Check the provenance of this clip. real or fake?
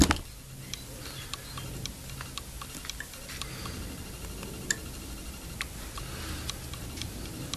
real